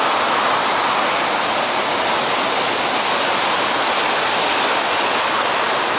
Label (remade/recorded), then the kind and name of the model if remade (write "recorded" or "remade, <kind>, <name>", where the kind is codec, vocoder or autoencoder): recorded